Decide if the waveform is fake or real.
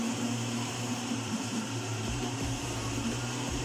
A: fake